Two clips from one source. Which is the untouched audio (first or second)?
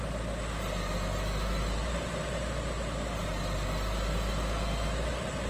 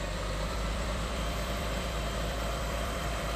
first